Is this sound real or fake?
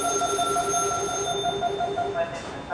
real